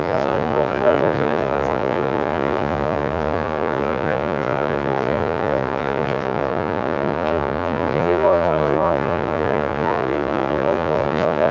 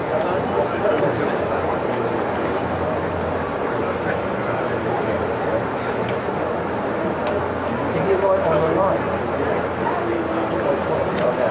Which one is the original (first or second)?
second